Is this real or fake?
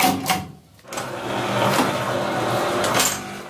real